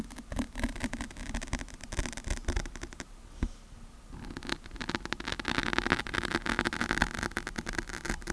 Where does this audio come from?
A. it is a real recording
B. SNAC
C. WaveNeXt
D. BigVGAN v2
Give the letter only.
A